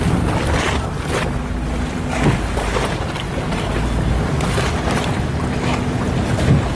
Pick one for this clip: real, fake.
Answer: real